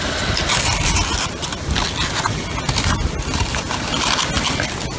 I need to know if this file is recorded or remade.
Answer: recorded